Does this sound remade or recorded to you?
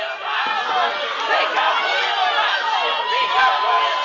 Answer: recorded